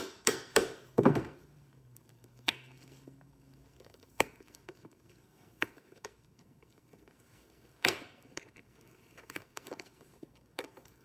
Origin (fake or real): fake